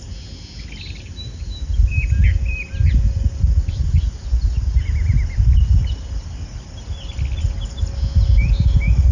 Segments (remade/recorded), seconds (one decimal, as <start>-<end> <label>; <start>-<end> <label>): 0.0-9.1 recorded